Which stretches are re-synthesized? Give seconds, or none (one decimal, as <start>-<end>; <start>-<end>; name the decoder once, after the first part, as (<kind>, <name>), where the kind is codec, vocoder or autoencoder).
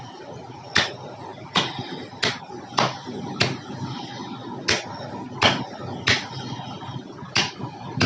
none